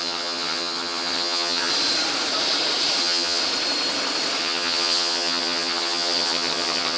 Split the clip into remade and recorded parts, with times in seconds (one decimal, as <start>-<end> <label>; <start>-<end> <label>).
0.0-1.7 remade; 1.7-3.0 recorded; 3.0-3.4 remade; 3.4-4.4 recorded; 4.4-7.0 remade